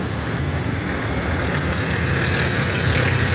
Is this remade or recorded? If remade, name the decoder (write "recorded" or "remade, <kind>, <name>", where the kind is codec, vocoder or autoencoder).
recorded